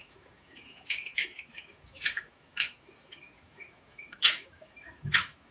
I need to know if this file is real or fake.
fake